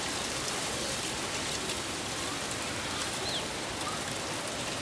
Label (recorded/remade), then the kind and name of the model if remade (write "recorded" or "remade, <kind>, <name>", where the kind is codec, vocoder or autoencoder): recorded